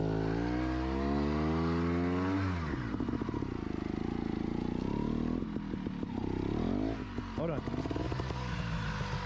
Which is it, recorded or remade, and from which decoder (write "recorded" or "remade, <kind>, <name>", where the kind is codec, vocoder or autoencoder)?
recorded